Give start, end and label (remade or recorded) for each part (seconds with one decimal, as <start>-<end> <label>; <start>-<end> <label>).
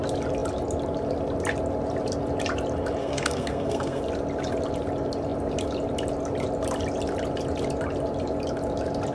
0.0-3.0 recorded; 3.0-4.0 remade; 4.0-9.1 recorded